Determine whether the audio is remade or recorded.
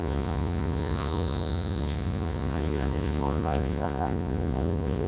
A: remade